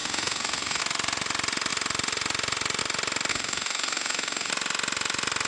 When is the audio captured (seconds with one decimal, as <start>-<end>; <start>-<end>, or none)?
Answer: 0.8-3.3; 4.5-5.5